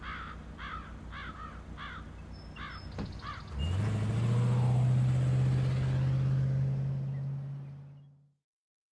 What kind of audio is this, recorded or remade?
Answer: recorded